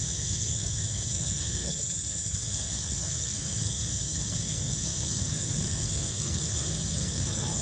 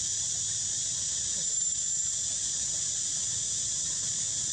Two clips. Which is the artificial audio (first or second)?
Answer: first